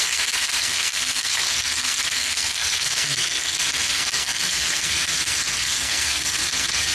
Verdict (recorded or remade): remade